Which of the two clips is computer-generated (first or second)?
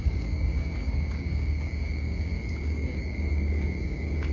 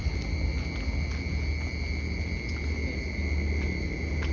first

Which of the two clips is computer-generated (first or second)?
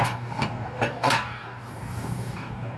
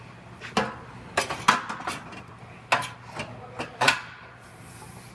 first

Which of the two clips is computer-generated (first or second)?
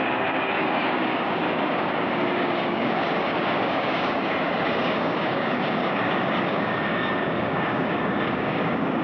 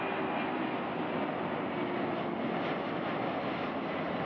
first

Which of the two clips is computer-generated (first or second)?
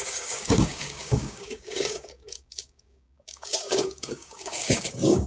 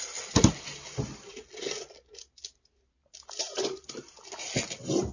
first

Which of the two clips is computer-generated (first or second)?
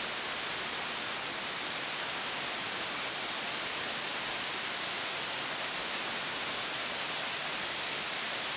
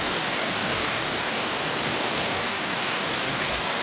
second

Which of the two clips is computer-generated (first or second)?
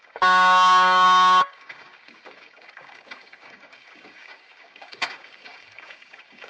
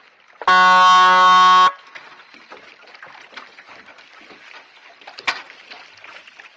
first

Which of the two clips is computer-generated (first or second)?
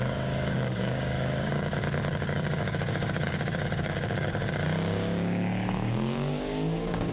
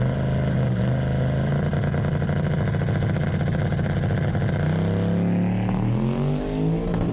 first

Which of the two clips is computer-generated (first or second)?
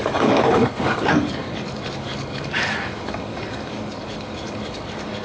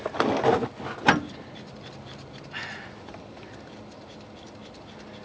first